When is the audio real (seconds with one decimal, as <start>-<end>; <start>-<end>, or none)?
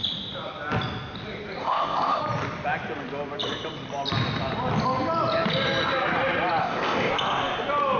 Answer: 0.0-1.6; 2.2-6.6; 7.1-8.0